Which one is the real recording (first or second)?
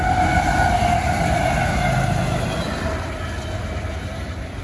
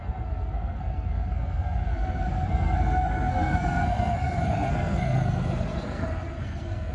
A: first